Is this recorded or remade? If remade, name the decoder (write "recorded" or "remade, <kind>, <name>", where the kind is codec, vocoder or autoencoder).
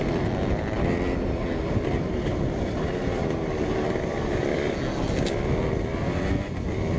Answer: recorded